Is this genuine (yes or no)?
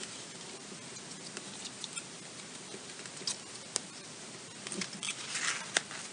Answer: yes